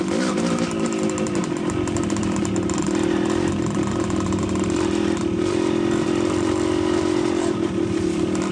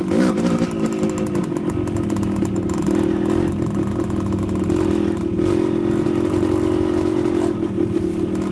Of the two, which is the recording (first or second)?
second